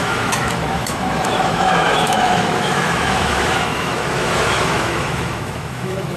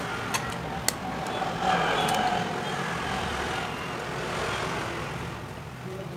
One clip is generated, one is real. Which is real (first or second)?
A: second